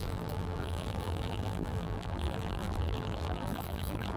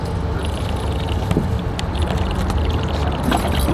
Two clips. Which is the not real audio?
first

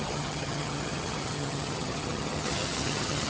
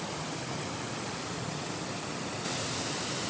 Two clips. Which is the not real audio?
first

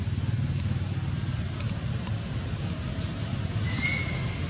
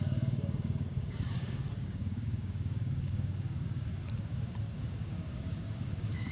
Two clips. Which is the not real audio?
second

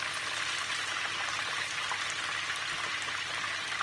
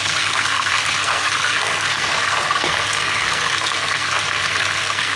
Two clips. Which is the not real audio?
second